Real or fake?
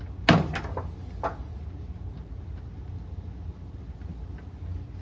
real